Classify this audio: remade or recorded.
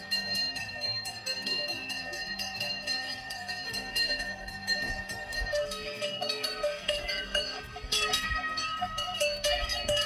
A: remade